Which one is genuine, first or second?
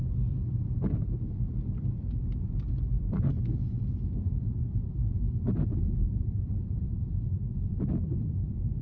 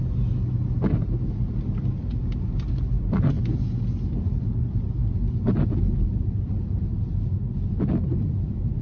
second